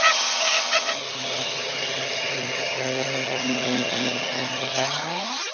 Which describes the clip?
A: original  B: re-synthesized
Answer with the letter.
B